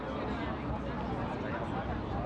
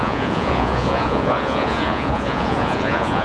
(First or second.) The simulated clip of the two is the second